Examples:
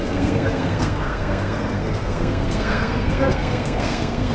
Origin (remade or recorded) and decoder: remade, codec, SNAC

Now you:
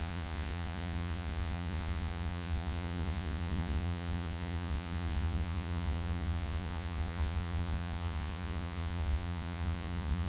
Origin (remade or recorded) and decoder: remade, vocoder, Vocos